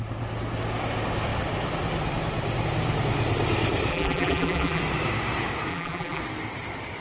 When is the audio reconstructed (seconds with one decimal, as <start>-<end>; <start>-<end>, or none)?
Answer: 3.9-4.8; 5.7-6.2